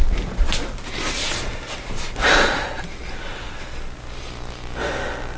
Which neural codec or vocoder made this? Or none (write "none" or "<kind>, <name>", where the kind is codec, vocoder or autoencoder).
none